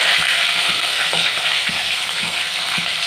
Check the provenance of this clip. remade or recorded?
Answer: remade